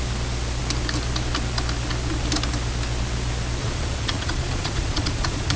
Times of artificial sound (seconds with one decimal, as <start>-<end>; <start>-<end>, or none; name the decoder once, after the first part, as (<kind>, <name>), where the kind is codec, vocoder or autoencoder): 3.6-5.6 (vocoder, Vocos)

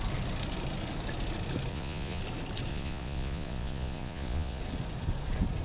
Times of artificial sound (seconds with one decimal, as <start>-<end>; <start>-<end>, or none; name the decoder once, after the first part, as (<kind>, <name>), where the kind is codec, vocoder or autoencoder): 1.7-2.2 (vocoder, Vocos); 2.7-4.6